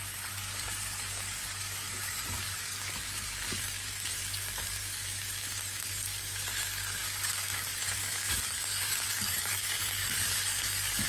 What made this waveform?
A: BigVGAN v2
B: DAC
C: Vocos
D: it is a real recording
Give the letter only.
B